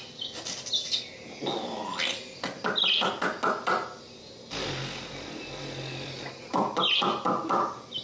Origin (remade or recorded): recorded